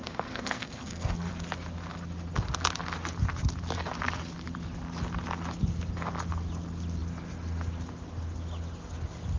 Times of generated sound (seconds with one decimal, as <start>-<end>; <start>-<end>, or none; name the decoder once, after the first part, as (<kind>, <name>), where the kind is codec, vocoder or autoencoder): 0.0-1.3 (codec, SNAC)